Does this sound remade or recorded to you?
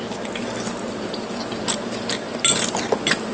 recorded